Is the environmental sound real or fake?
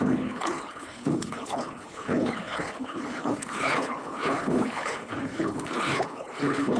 fake